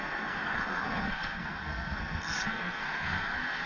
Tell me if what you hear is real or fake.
fake